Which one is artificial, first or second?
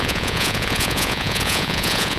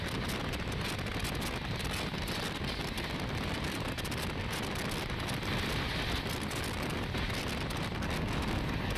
first